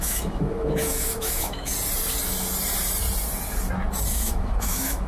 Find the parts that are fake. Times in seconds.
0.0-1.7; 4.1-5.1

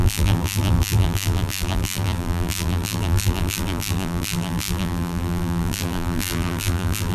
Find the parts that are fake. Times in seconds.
0.0-7.1

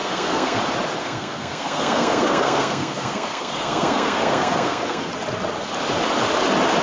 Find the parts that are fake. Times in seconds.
0.0-0.6; 1.0-5.1